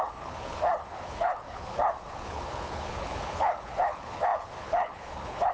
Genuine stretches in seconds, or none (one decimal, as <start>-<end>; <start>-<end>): none